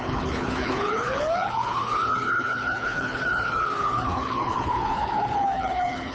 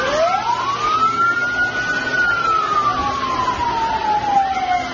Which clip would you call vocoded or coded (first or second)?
first